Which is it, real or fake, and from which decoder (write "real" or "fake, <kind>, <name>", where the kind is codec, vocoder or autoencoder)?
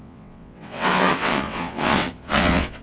fake, vocoder, WaveNeXt